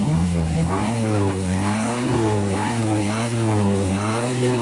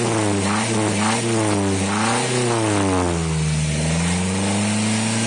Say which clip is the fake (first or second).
first